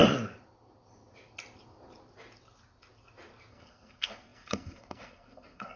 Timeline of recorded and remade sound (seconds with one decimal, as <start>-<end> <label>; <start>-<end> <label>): 0.0-3.5 recorded; 3.5-5.8 remade